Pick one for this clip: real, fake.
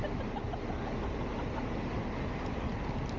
real